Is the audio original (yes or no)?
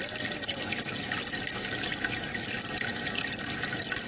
yes